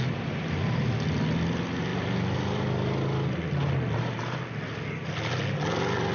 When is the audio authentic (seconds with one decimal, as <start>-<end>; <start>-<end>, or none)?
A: 0.0-6.1